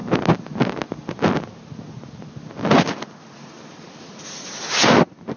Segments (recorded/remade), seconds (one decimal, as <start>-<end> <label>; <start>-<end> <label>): 0.0-3.2 recorded; 3.2-5.4 remade